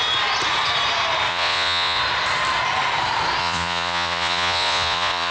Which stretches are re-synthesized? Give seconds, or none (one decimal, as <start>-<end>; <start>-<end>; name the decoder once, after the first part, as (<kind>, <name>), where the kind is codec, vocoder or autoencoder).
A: 1.3-2.0 (vocoder, Vocos); 3.4-5.3